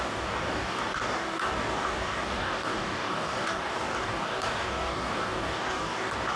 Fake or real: fake